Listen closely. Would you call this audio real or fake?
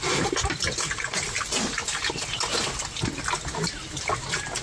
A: real